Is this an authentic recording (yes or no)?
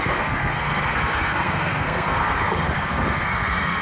no